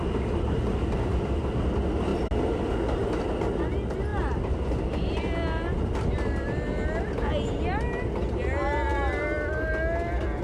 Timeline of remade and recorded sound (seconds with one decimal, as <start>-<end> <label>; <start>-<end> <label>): 0.0-10.4 recorded